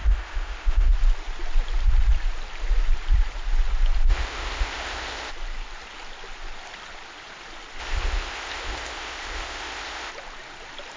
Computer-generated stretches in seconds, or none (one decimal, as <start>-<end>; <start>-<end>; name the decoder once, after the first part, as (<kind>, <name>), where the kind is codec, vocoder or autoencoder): 0.0-0.9 (codec, ZipCodec); 4.1-5.3; 7.8-10.1